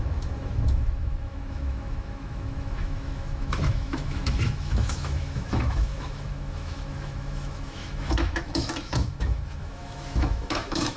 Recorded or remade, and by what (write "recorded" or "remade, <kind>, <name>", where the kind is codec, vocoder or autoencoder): remade, autoencoder, DAC-VAE